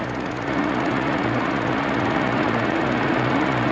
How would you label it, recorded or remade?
remade